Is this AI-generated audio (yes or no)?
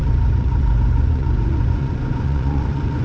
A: yes